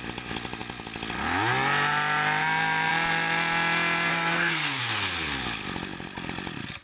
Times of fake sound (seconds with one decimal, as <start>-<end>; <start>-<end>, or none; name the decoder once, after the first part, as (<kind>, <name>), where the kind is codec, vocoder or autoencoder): 4.1-4.8 (codec, SNAC)